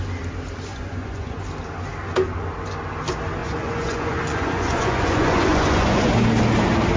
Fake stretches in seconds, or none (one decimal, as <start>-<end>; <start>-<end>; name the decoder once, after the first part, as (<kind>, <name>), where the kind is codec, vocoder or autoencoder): 0.7-1.4 (vocoder, Vocos); 3.4-6.1